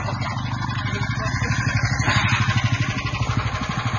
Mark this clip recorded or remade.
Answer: recorded